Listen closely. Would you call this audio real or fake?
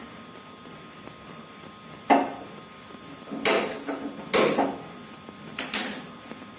real